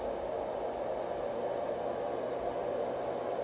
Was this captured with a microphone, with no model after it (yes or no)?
yes